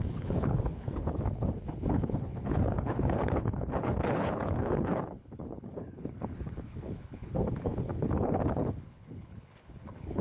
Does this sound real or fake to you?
fake